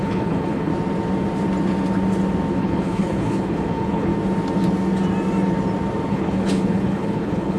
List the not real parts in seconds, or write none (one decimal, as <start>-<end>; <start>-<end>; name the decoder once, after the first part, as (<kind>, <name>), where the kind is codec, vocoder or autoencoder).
0.0-0.7 (codec, HILCodec); 2.6-4.1; 6.1-7.6